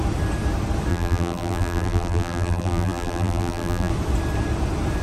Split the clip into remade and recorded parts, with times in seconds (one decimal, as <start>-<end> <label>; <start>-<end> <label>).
0.0-0.9 recorded; 0.9-3.9 remade; 3.9-5.0 recorded